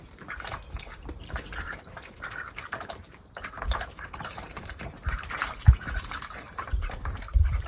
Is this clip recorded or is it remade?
remade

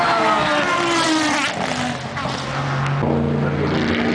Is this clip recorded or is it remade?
recorded